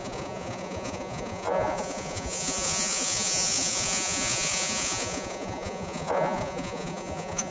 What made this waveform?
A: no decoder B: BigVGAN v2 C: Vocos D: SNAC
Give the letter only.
C